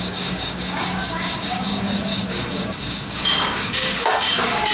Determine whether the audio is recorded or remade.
remade